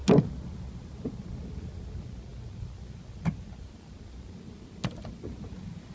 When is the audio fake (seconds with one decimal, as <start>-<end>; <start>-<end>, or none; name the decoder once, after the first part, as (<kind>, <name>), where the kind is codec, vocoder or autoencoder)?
none